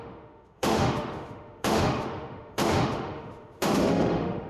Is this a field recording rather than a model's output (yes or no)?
no